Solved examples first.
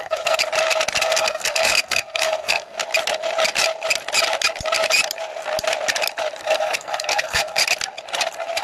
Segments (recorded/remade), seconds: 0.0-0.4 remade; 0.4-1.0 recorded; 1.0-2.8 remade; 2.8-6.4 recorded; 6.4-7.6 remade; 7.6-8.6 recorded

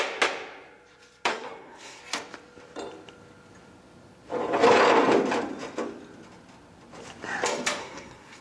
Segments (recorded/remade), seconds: 0.0-1.3 recorded; 1.3-2.0 remade; 2.0-7.8 recorded; 7.8-8.4 remade

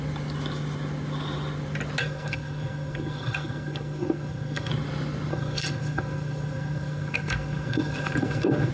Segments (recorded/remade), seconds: 0.0-2.0 recorded; 2.0-4.7 remade; 4.7-5.3 recorded; 5.3-8.7 remade

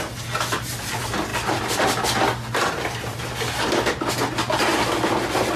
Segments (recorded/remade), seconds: 0.0-5.6 recorded

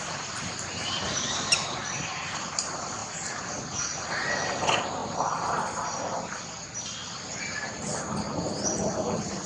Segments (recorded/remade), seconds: 0.0-9.5 recorded

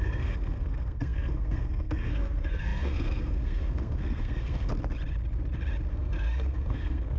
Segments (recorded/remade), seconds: 0.0-4.7 remade; 4.7-5.9 recorded; 5.9-7.2 remade

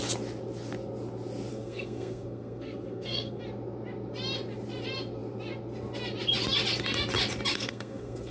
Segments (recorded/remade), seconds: 0.0-1.5 recorded; 1.5-3.4 remade; 3.4-7.5 recorded; 7.5-8.3 remade